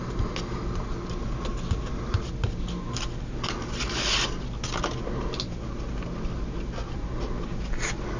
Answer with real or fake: real